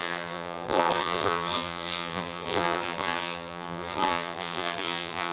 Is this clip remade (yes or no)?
yes